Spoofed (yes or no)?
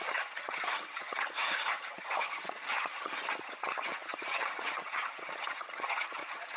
yes